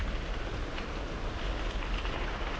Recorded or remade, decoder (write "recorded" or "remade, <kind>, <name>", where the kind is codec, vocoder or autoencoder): recorded